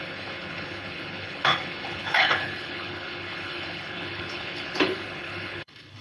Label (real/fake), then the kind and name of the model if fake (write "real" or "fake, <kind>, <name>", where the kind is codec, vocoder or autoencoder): fake, codec, HILCodec